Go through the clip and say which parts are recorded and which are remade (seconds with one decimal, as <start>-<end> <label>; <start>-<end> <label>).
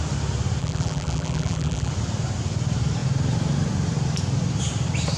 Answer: 0.0-0.6 recorded; 0.6-1.9 remade; 1.9-5.2 recorded